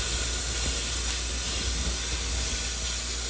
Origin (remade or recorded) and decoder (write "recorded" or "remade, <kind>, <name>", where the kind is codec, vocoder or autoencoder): recorded